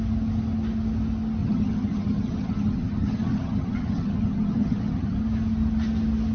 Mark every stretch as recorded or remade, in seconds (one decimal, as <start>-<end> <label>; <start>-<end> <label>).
0.0-1.4 recorded; 1.4-5.2 remade; 5.2-6.3 recorded